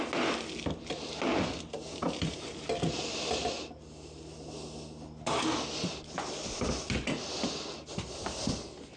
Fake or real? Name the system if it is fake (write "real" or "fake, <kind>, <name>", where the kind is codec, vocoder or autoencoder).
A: real